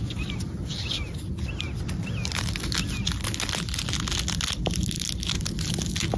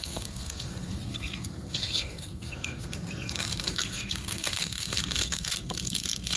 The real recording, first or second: first